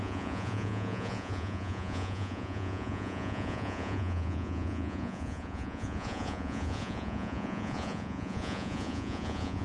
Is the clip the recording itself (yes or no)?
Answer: no